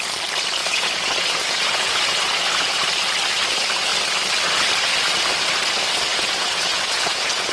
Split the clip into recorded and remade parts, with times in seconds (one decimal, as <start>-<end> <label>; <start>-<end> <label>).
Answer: 0.0-0.6 recorded; 0.6-2.8 remade; 2.8-6.1 recorded; 6.1-7.5 remade